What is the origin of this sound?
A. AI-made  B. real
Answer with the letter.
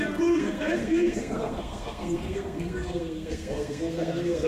A